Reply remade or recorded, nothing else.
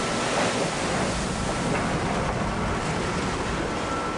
recorded